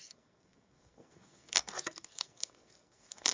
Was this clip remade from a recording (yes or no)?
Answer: yes